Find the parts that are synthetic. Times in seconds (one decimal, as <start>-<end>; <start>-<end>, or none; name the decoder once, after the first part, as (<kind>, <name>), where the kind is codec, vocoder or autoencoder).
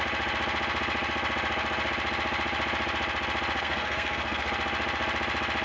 3.6-4.5 (codec, SNAC)